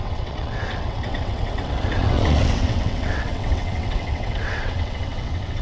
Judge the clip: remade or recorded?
remade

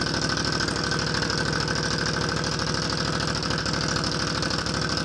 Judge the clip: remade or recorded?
recorded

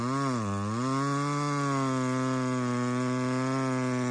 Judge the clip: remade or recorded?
recorded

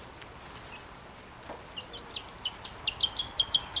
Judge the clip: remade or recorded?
recorded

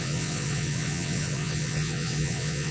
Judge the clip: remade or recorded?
remade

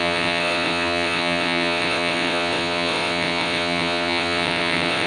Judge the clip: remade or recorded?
remade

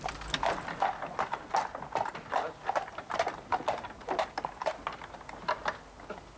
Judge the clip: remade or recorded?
recorded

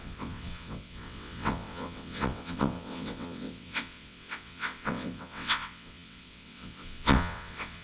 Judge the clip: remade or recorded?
remade